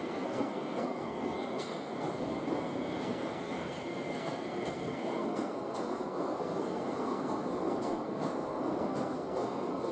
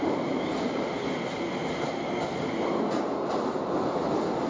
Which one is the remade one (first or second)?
first